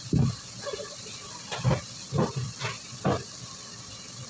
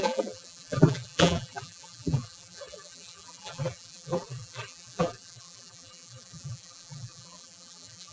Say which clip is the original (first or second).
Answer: first